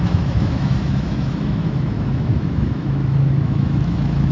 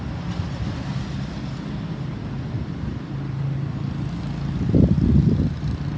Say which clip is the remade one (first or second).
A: first